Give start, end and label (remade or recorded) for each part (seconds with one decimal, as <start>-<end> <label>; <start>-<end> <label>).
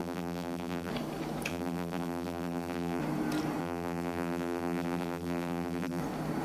0.0-0.9 remade; 0.9-1.5 recorded; 1.5-3.0 remade; 3.0-3.6 recorded; 3.6-6.0 remade; 6.0-6.4 recorded